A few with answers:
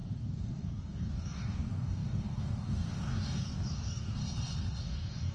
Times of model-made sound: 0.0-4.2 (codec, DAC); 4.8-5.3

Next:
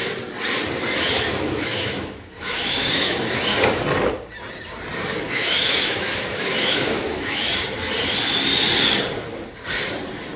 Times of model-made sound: 1.1-3.5 (autoencoder, DAC-VAE); 5.2-7.5

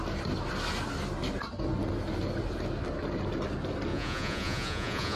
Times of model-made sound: 3.9-5.2 (vocoder, Vocos)

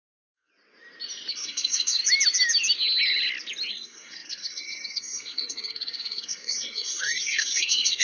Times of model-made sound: 0.0-0.5 (codec, SNAC); 1.3-2.0; 3.7-8.0